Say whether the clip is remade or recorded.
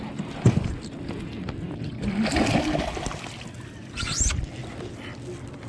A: recorded